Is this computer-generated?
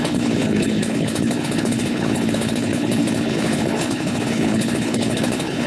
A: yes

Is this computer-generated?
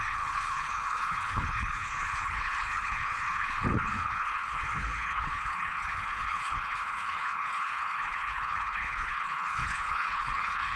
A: yes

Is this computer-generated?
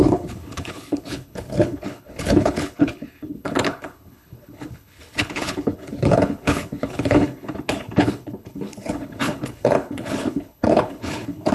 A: yes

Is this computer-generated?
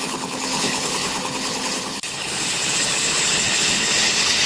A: yes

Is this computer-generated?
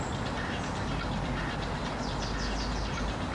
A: no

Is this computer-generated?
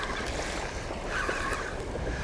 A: no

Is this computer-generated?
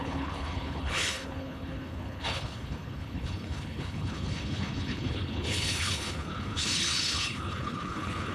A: yes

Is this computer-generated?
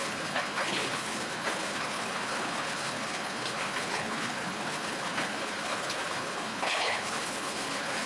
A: yes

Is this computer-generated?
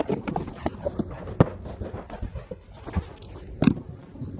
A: no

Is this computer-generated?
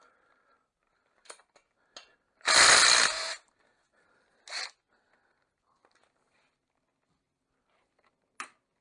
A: no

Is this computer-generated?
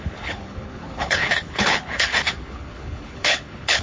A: yes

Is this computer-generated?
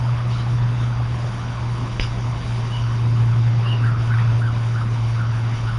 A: yes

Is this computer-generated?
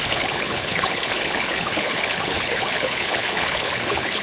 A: yes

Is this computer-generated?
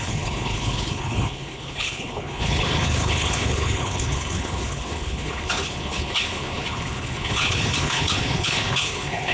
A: yes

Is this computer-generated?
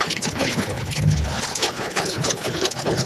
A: yes